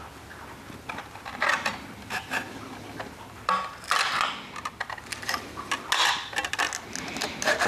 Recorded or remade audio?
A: recorded